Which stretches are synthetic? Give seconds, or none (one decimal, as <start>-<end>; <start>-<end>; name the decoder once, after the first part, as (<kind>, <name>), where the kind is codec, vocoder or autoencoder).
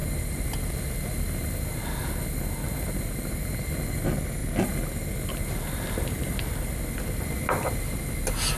none